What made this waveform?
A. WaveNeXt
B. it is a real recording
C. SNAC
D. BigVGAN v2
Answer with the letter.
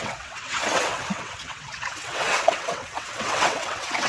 A